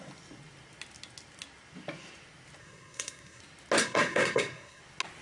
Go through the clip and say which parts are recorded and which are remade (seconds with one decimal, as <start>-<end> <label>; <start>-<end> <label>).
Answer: 0.0-2.6 recorded; 2.6-3.4 remade; 3.4-3.8 recorded; 3.8-4.8 remade; 4.8-5.2 recorded

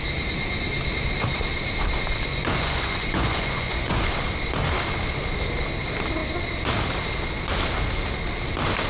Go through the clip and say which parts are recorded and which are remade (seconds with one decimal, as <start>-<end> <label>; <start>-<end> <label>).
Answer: 0.0-2.3 recorded; 2.3-4.1 remade; 4.1-8.9 recorded

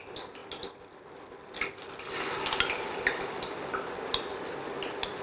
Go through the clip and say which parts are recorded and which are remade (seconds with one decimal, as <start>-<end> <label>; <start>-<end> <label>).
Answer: 0.0-5.2 recorded

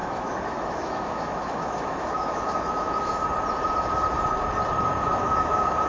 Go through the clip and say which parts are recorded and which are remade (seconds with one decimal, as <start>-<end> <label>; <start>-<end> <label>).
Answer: 0.0-3.2 remade; 3.2-5.0 recorded; 5.0-5.9 remade

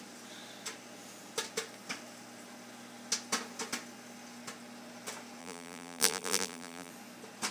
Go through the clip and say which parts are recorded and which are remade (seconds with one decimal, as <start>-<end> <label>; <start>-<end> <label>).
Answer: 0.0-5.4 recorded; 5.4-6.9 remade; 6.9-7.5 recorded